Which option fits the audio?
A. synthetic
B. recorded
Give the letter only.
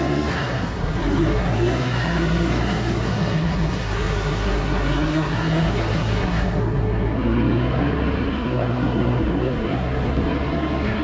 A